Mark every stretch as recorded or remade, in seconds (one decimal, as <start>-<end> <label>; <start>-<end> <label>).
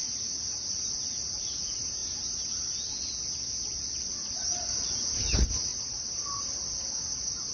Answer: 0.0-7.5 recorded